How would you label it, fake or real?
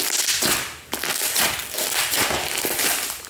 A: real